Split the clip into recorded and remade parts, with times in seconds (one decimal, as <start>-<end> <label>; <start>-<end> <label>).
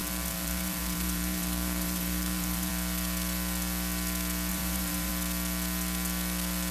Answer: 0.0-2.7 remade; 2.7-4.5 recorded; 4.5-5.1 remade; 5.1-6.7 recorded